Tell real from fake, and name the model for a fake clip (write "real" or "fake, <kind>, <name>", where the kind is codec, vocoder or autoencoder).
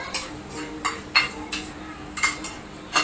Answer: real